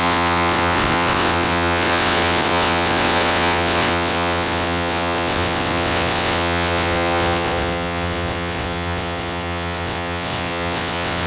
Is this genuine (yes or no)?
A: no